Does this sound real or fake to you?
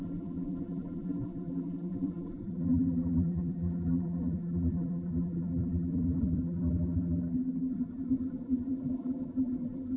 fake